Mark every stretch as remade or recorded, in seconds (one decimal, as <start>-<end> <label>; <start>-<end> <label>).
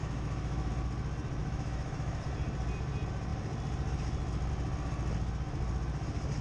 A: 0.0-0.7 remade; 0.7-1.4 recorded; 1.4-2.2 remade; 2.2-6.4 recorded